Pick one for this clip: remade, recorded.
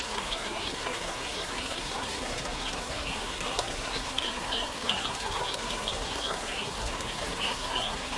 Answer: remade